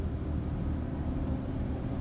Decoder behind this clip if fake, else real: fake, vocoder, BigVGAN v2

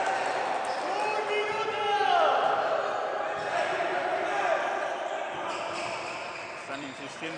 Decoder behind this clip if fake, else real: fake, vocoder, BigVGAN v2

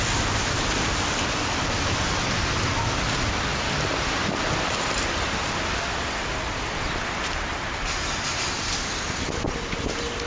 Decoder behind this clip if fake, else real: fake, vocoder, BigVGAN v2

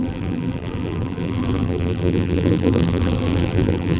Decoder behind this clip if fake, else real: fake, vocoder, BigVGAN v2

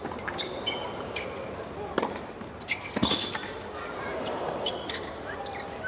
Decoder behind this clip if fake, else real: real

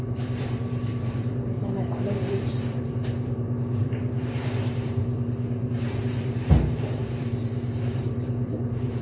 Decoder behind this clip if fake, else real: fake, vocoder, BigVGAN v2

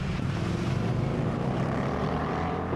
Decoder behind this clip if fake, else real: fake, vocoder, BigVGAN v2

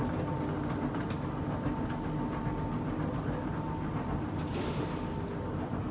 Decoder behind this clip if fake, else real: real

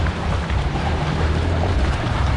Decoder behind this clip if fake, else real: fake, vocoder, BigVGAN v2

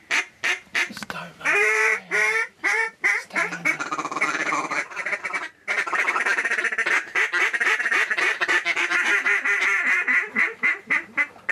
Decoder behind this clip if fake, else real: fake, vocoder, BigVGAN v2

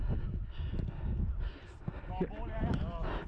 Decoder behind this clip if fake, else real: real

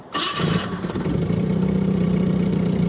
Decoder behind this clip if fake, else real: fake, vocoder, BigVGAN v2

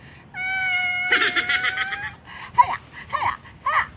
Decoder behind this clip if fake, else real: fake, vocoder, BigVGAN v2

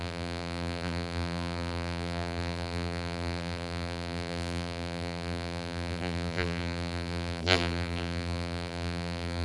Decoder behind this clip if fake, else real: fake, vocoder, BigVGAN v2